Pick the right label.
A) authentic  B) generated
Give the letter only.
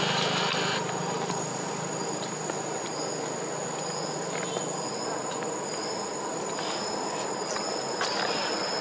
A